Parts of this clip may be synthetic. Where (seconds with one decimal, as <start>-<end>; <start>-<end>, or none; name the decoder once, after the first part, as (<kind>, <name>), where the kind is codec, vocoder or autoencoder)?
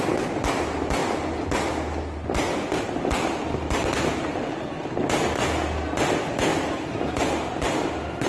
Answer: 6.5-8.3 (vocoder, BigVGAN v2)